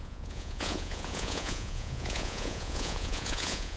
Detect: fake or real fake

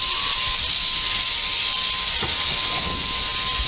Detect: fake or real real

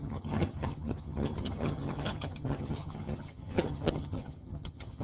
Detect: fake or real fake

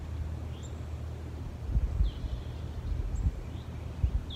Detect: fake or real real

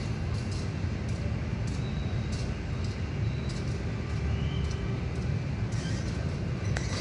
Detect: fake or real real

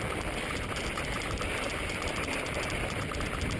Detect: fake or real real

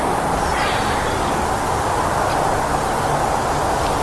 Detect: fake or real real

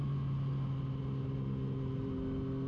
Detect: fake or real real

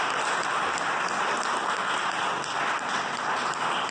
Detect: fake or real real